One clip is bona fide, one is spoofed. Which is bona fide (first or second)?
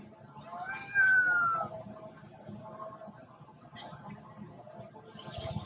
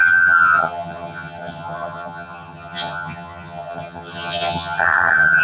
first